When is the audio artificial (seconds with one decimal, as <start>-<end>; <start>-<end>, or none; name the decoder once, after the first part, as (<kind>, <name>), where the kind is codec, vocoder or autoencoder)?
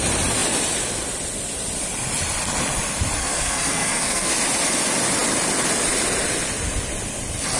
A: 3.2-4.3 (codec, SNAC)